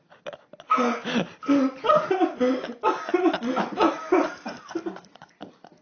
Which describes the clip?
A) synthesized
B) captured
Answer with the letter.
B